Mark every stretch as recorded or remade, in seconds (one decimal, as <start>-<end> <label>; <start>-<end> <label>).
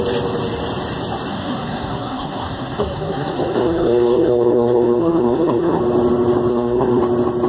0.0-1.3 recorded; 1.3-5.8 remade; 5.8-6.5 recorded; 6.5-7.0 remade; 7.0-7.5 recorded